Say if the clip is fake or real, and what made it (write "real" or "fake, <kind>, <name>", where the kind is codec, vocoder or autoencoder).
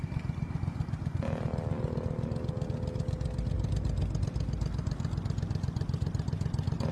real